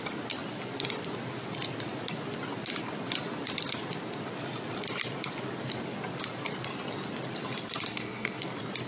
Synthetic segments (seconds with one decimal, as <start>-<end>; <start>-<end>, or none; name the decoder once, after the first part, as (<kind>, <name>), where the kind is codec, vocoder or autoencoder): 7.9-8.4 (codec, SNAC)